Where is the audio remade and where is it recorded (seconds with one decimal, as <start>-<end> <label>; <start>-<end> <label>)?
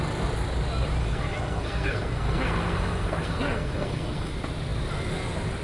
0.0-1.0 recorded; 1.0-4.3 remade; 4.3-5.6 recorded